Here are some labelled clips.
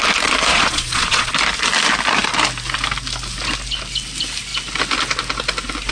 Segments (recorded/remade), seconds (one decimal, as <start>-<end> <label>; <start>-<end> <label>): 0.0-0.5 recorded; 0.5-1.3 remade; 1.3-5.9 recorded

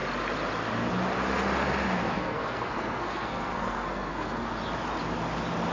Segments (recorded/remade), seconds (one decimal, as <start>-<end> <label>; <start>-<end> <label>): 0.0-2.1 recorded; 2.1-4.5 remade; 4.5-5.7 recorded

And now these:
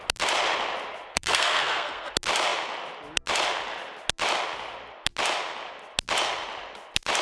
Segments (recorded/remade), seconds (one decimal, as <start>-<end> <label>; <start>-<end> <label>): 0.0-1.1 recorded; 1.1-2.1 remade; 2.1-7.2 recorded

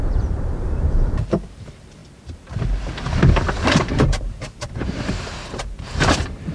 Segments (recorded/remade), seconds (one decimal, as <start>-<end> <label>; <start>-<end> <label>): 0.0-2.0 remade; 2.0-3.3 recorded; 3.3-6.5 remade

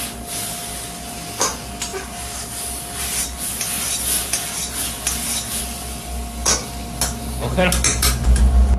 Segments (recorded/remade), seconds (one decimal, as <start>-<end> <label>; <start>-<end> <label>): 0.0-1.9 recorded; 1.9-2.5 remade; 2.5-7.9 recorded; 7.9-8.4 remade; 8.4-8.8 recorded

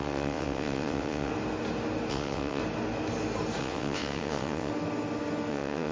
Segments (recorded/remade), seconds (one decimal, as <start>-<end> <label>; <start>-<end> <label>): 0.0-1.3 remade; 1.3-2.1 recorded; 2.1-2.6 remade; 2.6-3.6 recorded; 3.6-4.7 remade; 4.7-5.5 recorded; 5.5-5.9 remade